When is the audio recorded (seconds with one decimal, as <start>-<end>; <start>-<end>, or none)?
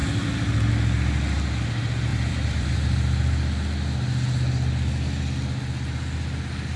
0.7-2.1; 2.7-6.8